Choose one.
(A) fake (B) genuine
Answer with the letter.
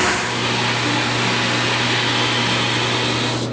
B